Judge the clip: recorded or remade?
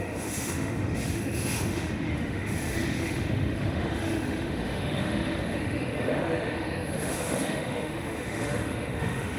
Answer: remade